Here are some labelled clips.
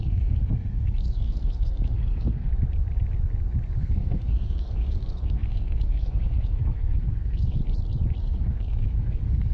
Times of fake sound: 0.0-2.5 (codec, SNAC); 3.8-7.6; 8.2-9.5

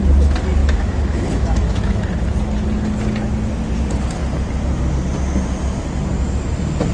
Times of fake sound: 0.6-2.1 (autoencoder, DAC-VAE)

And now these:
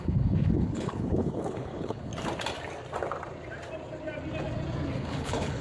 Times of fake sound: 0.0-2.1 (codec, HILCodec); 5.0-5.6

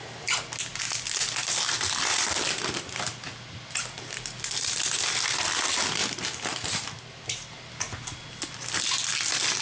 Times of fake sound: none

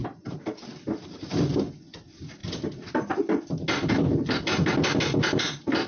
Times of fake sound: 0.0-1.3 (vocoder, BigVGAN v2)

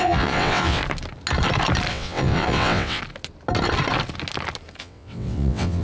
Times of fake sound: 0.0-0.8 (vocoder, WaveNeXt); 1.9-3.0; 4.8-5.8

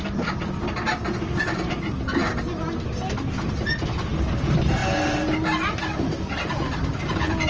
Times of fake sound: none